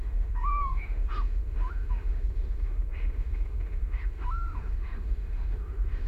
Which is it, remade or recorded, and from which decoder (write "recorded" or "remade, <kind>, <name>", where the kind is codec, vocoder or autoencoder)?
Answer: remade, autoencoder, DAC-VAE